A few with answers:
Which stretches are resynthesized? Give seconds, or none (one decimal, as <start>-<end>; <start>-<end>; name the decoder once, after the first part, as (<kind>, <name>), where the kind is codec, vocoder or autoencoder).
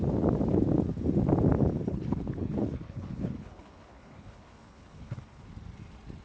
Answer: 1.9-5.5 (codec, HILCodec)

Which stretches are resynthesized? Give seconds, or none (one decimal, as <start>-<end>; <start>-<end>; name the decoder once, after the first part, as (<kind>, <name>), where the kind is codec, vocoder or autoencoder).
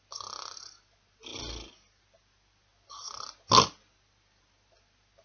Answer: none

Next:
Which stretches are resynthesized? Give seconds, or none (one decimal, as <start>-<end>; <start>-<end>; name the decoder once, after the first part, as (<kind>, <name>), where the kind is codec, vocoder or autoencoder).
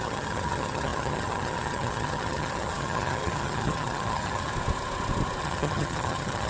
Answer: 0.0-4.5 (vocoder, HiFi-GAN); 5.4-6.5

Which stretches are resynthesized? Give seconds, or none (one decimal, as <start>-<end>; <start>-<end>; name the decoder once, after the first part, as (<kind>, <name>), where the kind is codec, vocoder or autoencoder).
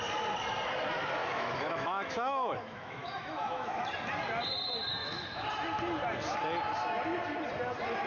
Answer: 1.2-3.9 (autoencoder, DAC-VAE); 5.0-5.5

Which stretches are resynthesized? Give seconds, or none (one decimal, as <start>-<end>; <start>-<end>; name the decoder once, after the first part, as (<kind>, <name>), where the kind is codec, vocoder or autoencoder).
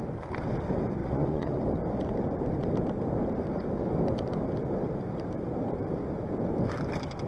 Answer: 1.0-1.6 (vocoder, Vocos)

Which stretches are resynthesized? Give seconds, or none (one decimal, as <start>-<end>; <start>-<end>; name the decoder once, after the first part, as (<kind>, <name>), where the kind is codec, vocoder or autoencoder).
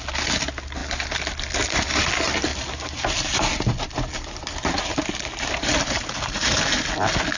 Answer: 2.5-6.9 (vocoder, BigVGAN v2)